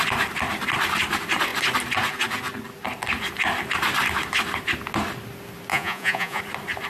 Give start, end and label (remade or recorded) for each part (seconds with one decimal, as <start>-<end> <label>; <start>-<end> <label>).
0.0-5.7 recorded; 5.7-6.4 remade; 6.4-6.9 recorded